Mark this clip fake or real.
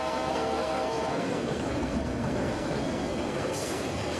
fake